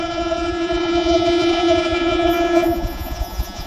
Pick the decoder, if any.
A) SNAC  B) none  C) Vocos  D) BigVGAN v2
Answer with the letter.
C